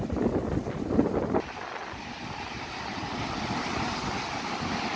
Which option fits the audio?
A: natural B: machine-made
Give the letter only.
A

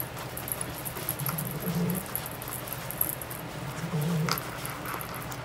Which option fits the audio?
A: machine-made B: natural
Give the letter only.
B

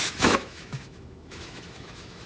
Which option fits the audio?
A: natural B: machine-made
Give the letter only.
B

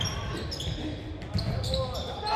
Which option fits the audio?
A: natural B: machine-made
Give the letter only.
A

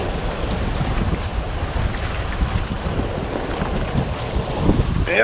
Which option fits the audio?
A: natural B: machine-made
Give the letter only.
A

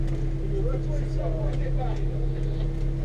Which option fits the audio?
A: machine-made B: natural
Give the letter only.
B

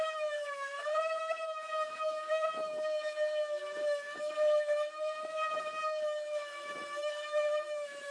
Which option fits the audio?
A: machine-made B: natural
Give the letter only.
A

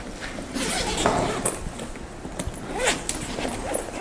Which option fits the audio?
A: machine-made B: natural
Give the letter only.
B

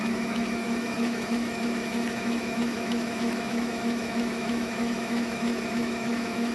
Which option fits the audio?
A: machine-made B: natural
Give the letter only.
A